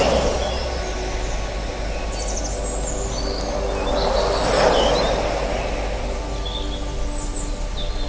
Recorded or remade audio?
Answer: recorded